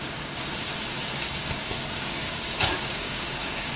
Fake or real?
fake